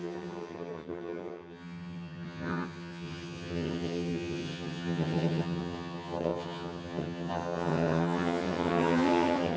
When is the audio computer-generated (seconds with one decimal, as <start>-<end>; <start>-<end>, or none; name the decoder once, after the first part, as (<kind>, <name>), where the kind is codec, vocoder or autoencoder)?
0.0-9.6 (vocoder, HiFi-GAN)